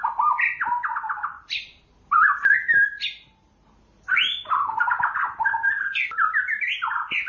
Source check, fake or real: real